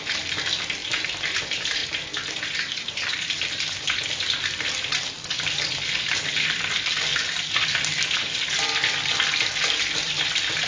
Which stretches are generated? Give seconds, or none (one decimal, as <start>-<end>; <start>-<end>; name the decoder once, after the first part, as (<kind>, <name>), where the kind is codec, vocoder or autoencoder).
0.0-0.8 (vocoder, BigVGAN v2); 1.4-1.8; 3.1-10.7